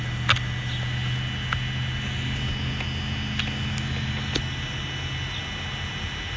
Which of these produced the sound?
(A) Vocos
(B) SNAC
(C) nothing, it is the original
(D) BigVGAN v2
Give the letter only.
C